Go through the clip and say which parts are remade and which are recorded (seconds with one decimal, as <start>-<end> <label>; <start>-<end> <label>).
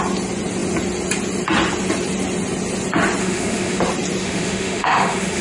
0.0-3.2 recorded; 3.2-3.8 remade; 3.8-4.2 recorded; 4.2-5.4 remade